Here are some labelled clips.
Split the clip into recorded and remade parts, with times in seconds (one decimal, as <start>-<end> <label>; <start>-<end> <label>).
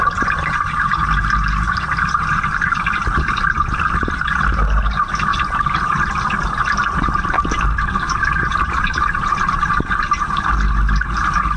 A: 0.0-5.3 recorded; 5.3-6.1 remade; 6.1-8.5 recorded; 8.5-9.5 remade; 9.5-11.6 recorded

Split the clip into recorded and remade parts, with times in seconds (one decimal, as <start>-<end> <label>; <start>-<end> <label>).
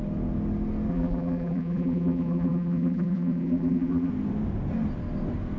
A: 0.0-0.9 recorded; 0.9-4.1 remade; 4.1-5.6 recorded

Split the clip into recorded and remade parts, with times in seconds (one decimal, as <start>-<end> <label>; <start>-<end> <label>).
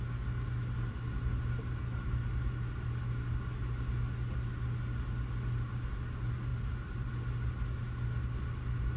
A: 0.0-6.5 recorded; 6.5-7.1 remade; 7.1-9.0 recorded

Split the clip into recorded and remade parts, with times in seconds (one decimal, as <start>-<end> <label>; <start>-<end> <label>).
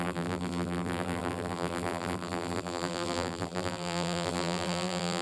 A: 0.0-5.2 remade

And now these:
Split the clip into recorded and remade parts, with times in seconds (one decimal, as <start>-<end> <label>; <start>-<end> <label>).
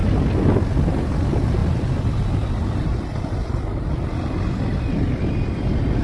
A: 0.0-1.6 recorded; 1.6-3.8 remade; 3.8-4.7 recorded; 4.7-6.0 remade